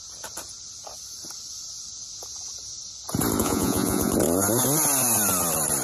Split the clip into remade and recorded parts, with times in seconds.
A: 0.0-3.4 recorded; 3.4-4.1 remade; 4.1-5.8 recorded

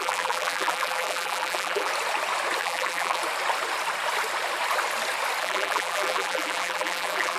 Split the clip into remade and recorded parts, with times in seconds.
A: 0.0-1.9 remade; 1.9-2.6 recorded; 2.6-3.2 remade; 3.2-5.4 recorded; 5.4-7.4 remade